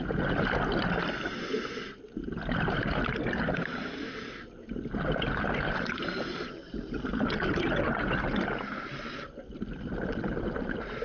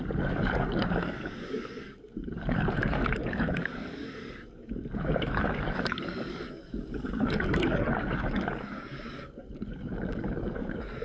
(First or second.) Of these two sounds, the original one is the first